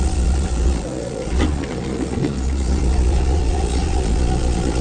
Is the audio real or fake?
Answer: fake